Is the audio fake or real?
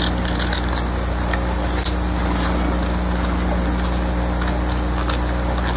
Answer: real